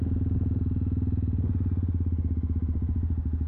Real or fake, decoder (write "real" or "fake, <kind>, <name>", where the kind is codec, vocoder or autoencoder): real